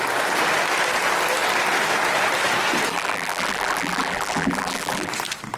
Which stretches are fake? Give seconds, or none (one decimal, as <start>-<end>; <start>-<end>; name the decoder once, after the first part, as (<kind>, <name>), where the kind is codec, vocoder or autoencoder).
2.9-5.1 (vocoder, BigVGAN v2)